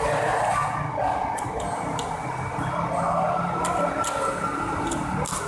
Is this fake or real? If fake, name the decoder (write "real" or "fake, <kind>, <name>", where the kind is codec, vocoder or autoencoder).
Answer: real